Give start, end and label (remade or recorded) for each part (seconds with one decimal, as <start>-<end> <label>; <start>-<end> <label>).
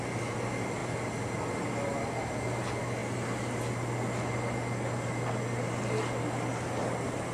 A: 0.0-7.3 recorded